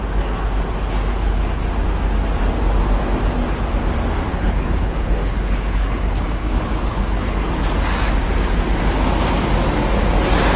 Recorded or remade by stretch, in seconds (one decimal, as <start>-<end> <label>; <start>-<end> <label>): 0.0-1.1 recorded; 1.1-1.6 remade; 1.6-4.3 recorded; 4.3-7.5 remade; 7.5-10.6 recorded